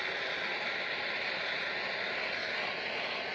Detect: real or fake real